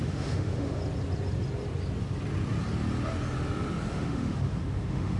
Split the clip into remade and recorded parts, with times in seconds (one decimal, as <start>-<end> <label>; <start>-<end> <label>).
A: 0.0-0.8 remade; 0.8-3.9 recorded; 3.9-5.2 remade